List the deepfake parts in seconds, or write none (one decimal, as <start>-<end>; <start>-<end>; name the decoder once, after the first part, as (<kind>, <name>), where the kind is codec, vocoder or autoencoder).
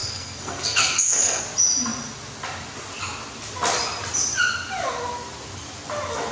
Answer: 0.0-1.4 (codec, SNAC)